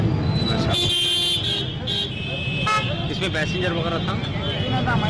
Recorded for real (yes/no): yes